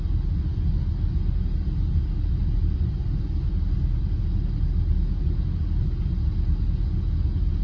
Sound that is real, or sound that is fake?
real